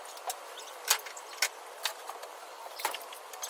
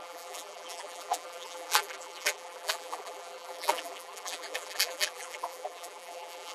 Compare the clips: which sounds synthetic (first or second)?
second